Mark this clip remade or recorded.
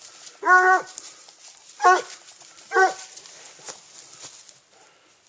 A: recorded